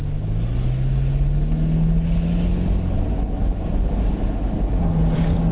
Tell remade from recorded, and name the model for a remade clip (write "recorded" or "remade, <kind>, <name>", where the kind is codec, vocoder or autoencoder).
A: recorded